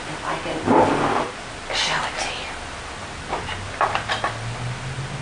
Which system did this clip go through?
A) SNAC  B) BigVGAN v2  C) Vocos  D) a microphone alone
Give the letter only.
D